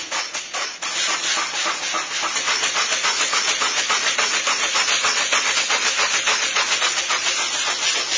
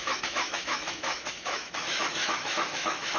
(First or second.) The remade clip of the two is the second